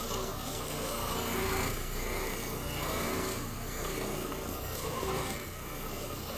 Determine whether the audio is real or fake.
fake